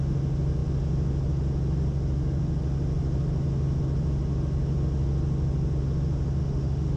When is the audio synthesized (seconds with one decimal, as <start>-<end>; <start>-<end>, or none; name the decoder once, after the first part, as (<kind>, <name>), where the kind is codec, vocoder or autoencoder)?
6.4-7.0 (autoencoder, DAC-VAE)